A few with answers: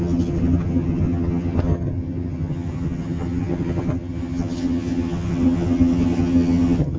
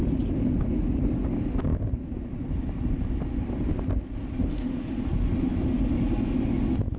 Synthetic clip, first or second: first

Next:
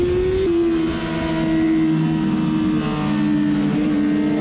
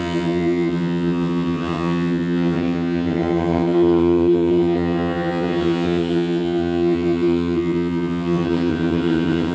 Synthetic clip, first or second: second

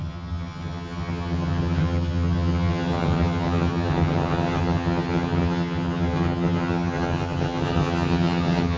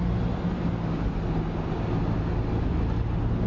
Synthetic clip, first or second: first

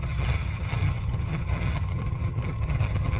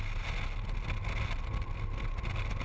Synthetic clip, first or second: first